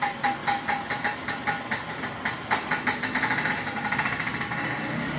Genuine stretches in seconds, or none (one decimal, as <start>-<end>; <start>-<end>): 0.0-5.2